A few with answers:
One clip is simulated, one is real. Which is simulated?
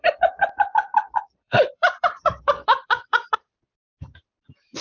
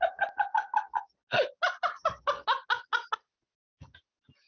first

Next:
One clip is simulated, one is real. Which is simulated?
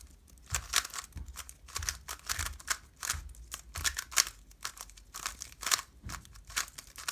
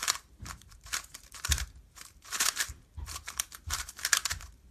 second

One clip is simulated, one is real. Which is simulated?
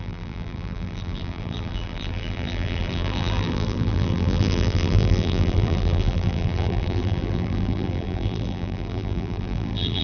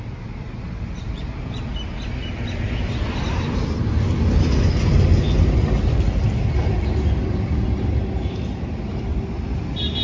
first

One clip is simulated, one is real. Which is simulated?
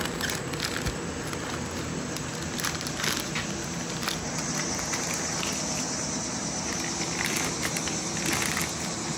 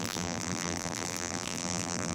second